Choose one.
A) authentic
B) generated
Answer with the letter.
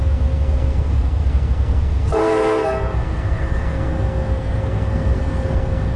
B